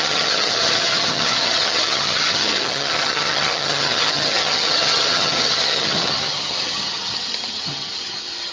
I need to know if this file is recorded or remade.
remade